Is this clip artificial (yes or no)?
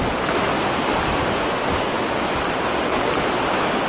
no